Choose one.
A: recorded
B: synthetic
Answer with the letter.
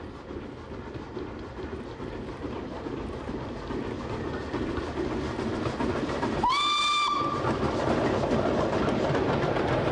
A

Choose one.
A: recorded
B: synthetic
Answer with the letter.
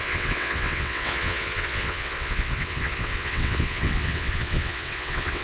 B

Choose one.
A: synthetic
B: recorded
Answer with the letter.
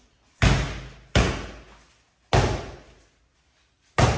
B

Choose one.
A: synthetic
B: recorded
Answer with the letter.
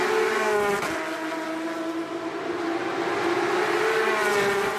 B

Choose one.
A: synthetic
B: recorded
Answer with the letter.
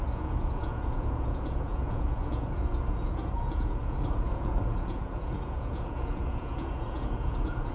A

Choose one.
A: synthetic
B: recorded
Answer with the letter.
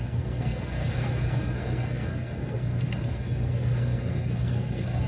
A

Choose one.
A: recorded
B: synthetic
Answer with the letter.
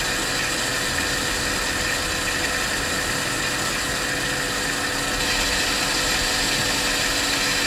A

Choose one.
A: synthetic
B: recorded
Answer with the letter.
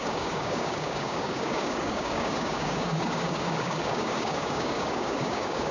A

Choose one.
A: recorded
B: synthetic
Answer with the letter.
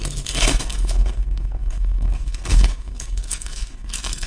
B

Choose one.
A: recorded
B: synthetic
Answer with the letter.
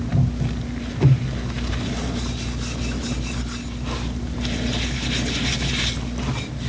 A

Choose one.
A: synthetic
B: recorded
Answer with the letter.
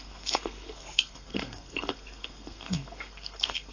A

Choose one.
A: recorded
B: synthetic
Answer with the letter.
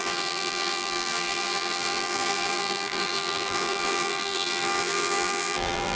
B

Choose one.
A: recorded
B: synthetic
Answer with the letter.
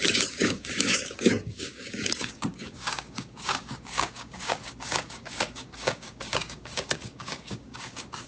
B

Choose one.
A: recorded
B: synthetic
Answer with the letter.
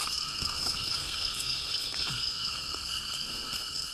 B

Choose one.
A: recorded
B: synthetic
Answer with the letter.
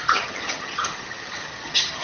B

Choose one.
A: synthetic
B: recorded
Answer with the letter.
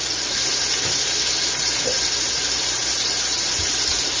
A